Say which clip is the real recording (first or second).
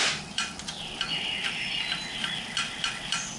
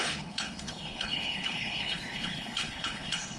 first